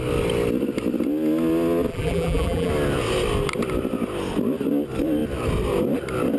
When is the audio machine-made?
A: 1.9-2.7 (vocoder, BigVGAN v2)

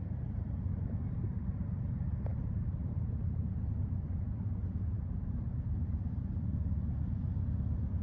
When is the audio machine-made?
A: 2.3-6.7 (vocoder, BigVGAN v2)

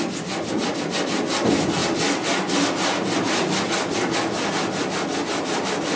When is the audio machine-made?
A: none

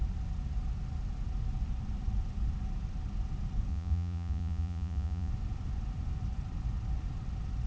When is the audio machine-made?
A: 3.7-5.3 (vocoder, Vocos)

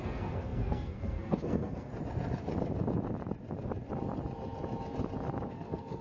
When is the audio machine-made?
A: 0.0-1.9 (codec, SNAC); 5.5-6.0

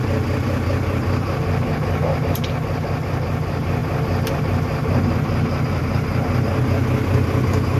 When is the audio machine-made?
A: none

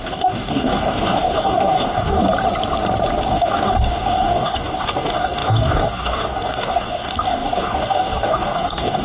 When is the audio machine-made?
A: 0.0-2.2 (codec, DAC); 3.3-9.0

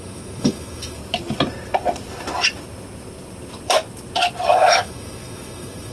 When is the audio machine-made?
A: 0.0-1.0 (autoencoder, DAC-VAE); 4.5-5.9